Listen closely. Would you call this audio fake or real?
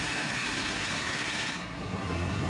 fake